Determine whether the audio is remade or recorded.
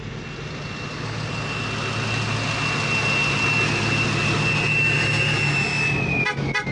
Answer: recorded